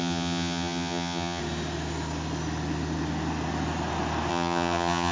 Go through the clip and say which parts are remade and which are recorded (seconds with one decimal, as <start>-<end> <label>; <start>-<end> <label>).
0.0-1.4 remade; 1.4-4.3 recorded; 4.3-5.1 remade